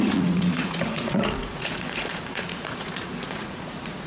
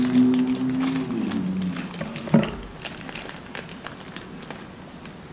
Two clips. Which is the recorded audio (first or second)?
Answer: second